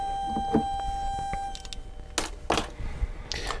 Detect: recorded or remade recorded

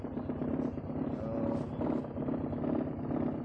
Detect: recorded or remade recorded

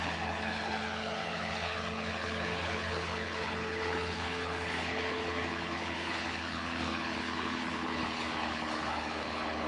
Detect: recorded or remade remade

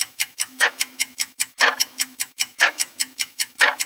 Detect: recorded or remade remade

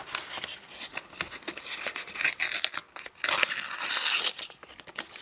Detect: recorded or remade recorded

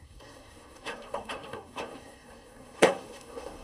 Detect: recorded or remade remade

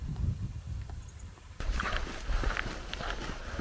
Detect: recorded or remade remade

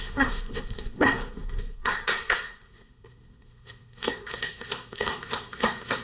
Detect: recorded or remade remade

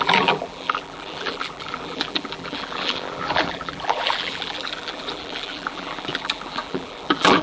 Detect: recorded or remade remade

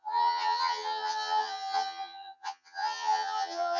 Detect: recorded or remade remade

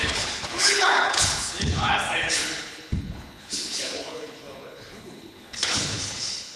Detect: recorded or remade remade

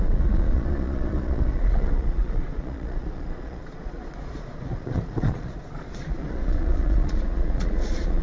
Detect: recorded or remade remade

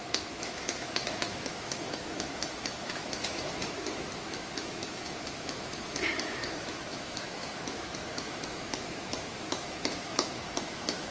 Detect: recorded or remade remade